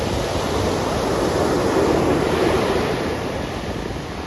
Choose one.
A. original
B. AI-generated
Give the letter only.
A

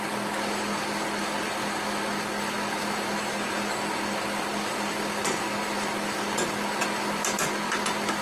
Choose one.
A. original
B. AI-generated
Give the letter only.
A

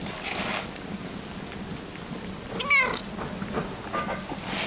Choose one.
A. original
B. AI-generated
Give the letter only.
A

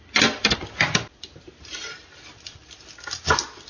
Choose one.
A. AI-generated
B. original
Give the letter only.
B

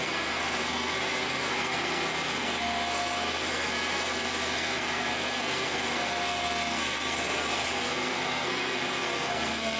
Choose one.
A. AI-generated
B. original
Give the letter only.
A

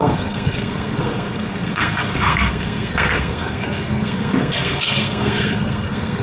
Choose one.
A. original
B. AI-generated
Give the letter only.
B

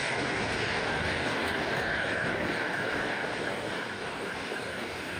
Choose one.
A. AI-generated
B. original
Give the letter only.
A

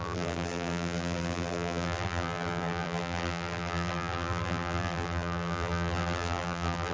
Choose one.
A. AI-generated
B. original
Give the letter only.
A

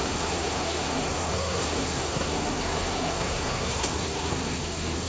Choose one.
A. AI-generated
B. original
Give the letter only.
A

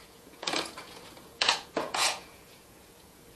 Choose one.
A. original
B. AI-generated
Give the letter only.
B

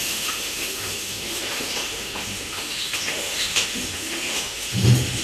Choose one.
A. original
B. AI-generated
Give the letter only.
B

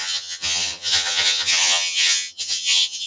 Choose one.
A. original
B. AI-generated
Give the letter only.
B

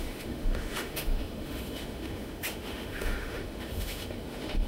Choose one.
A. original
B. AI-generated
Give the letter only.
B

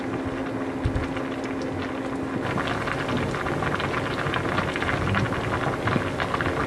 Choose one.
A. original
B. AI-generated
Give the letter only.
A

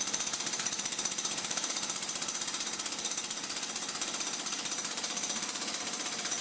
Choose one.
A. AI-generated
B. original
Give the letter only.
A